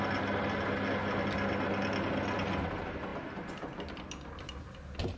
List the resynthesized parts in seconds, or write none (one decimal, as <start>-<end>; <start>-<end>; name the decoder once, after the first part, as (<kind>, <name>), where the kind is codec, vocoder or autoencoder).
none